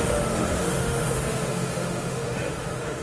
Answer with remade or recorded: remade